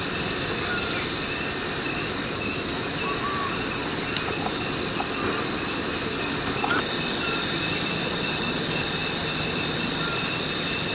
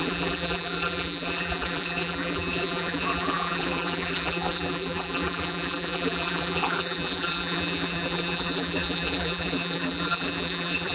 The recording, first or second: first